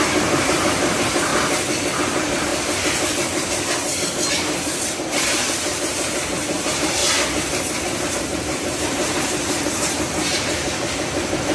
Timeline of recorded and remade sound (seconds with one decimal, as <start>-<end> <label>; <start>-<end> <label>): 0.0-1.3 remade; 1.3-2.0 recorded; 2.0-2.5 remade; 2.5-4.3 recorded; 4.3-7.0 remade; 7.0-8.1 recorded; 8.1-11.5 remade